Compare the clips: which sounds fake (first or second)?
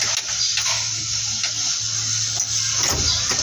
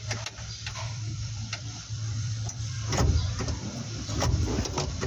second